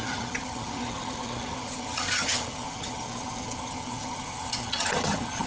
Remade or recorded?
remade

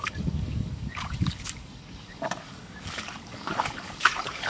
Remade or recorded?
remade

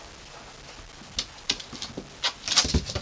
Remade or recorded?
recorded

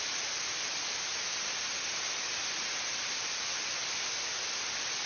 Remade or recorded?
recorded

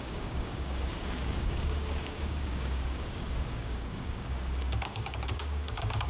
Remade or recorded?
remade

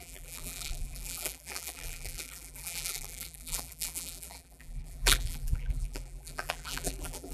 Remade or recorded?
remade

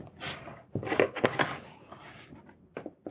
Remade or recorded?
recorded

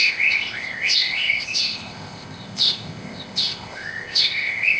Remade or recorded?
remade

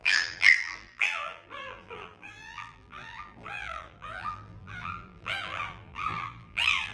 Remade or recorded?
remade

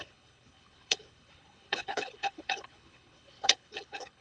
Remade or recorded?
remade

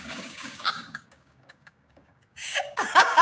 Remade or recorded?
remade